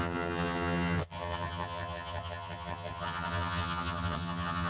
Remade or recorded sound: remade